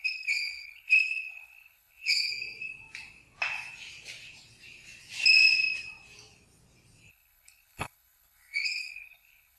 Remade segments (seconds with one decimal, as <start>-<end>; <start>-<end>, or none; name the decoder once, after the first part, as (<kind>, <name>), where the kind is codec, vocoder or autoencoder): 0.0-2.3 (codec, HILCodec); 7.1-9.6